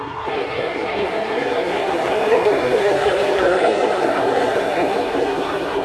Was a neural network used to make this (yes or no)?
yes